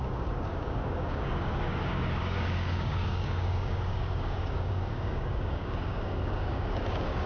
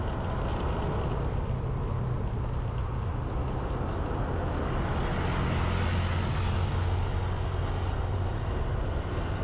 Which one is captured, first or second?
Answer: second